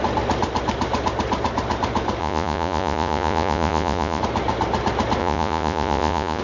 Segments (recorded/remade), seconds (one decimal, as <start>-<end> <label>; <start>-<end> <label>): 0.0-2.2 recorded; 2.2-4.2 remade; 4.2-5.2 recorded; 5.2-6.4 remade